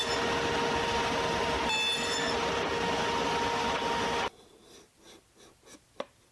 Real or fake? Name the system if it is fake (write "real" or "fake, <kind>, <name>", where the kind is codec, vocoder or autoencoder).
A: real